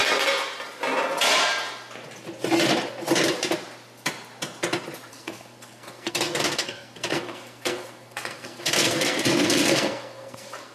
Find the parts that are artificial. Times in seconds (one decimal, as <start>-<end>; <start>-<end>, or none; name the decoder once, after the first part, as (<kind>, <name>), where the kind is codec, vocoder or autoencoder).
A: 5.1-10.7 (codec, SNAC)